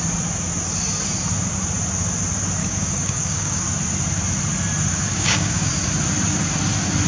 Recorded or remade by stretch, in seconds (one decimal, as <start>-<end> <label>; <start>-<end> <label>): 0.0-2.6 recorded; 2.6-3.6 remade; 3.6-4.9 recorded; 4.9-5.7 remade; 5.7-7.1 recorded